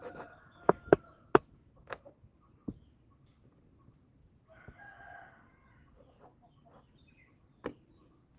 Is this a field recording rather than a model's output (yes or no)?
yes